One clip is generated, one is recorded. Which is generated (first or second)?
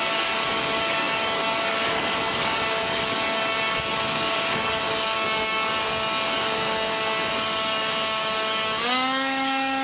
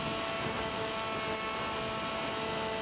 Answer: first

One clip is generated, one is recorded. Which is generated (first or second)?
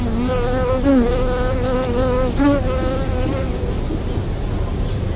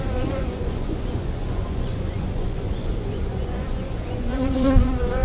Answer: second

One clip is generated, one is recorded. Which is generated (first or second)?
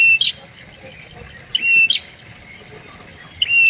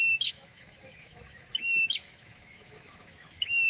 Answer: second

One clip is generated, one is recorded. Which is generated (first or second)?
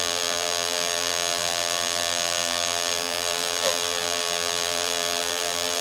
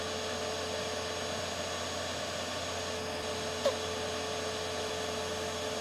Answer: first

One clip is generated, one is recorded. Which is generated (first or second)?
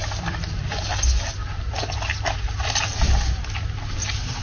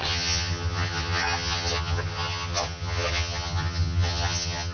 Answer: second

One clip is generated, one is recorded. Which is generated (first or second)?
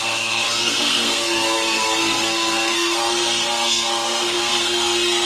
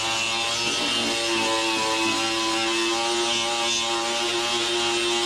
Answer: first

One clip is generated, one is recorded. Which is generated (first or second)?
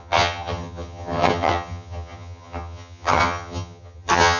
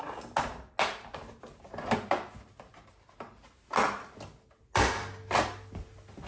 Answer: first